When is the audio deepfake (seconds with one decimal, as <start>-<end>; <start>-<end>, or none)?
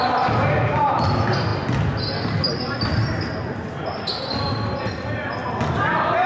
none